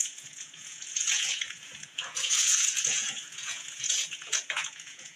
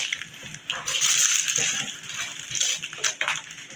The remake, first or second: first